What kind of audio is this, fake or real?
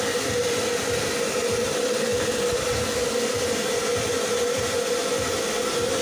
real